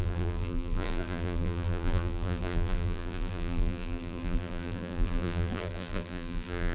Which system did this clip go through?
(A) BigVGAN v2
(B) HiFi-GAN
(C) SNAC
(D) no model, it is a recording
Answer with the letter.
A